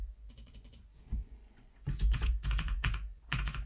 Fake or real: fake